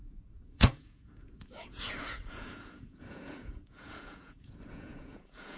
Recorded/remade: remade